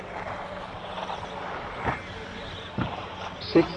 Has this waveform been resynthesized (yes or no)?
no